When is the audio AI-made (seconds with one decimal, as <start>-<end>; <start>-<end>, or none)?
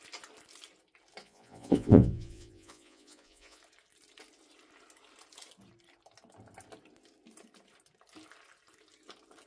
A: 1.2-3.6